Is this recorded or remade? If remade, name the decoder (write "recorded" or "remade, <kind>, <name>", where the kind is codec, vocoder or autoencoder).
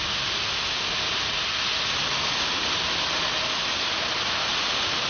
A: recorded